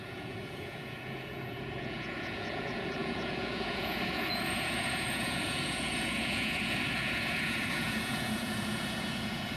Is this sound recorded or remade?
remade